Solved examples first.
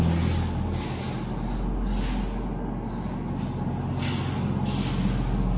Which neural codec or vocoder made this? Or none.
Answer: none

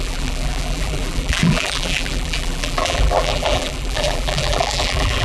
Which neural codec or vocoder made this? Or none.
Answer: vocoder, BigVGAN v2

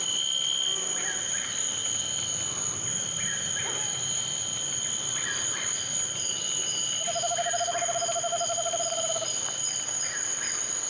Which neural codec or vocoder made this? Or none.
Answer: vocoder, BigVGAN v2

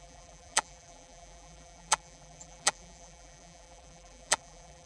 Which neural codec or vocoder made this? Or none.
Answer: vocoder, BigVGAN v2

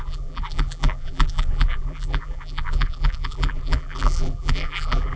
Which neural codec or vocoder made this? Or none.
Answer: vocoder, BigVGAN v2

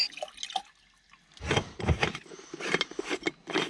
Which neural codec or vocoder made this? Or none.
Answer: none